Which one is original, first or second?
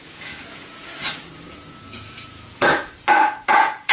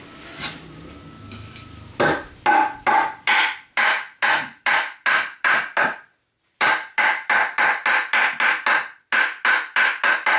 second